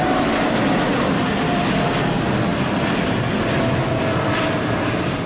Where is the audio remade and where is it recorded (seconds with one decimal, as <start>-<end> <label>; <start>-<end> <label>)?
0.0-0.8 remade; 0.8-5.3 recorded